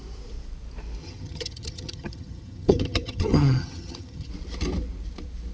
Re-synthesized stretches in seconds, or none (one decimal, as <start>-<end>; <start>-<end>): 1.0-4.3